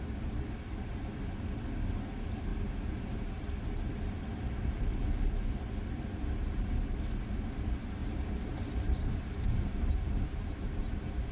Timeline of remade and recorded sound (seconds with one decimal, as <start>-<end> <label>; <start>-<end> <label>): 0.0-2.5 recorded; 2.5-3.1 remade; 3.1-8.0 recorded; 8.0-10.8 remade; 10.8-11.3 recorded

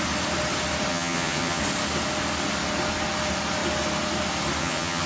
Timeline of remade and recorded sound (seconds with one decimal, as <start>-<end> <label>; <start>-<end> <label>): 0.0-0.9 recorded; 0.9-1.6 remade; 1.6-4.6 recorded; 4.6-5.1 remade

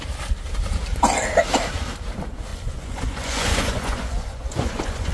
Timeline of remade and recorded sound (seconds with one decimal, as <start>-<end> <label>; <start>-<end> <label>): 0.0-2.5 recorded; 2.5-5.1 remade

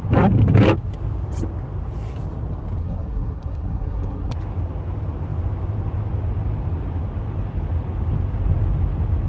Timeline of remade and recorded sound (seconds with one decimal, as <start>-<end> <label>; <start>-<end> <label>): 0.0-2.8 recorded; 2.8-4.3 remade; 4.3-9.3 recorded